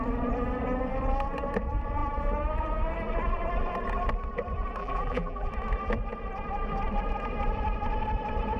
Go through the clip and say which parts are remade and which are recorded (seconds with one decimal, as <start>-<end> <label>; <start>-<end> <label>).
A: 0.0-4.8 recorded; 4.8-5.5 remade; 5.5-8.6 recorded